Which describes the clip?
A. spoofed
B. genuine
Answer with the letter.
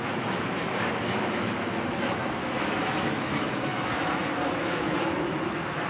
A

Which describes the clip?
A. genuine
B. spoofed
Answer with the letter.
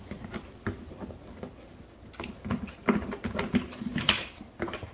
A